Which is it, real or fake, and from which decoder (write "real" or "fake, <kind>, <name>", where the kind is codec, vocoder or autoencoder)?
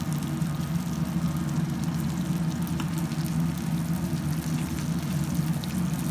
real